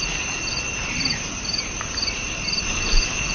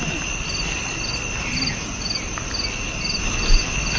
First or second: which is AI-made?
first